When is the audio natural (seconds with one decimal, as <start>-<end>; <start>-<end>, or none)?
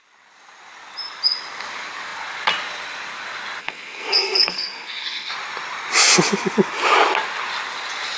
0.0-3.6; 5.3-8.2